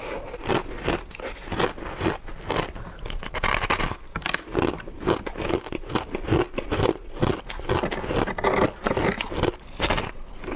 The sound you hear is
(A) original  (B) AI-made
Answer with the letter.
A